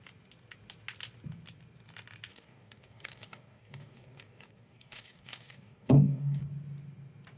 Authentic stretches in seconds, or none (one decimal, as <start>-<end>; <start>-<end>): 0.0-2.3; 6.4-7.4